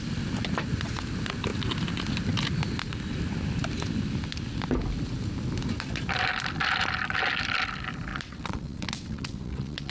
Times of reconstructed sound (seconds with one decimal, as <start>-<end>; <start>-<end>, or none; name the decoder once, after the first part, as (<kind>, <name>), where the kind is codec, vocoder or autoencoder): 8.1-9.9 (vocoder, WaveNeXt)